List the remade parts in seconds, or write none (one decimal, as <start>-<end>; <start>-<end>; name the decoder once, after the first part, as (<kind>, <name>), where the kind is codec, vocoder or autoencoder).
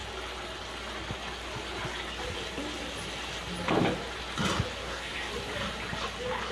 4.8-5.3 (codec, SNAC)